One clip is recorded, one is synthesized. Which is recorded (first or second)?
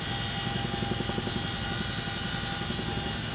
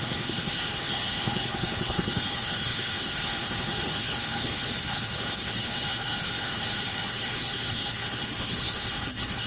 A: first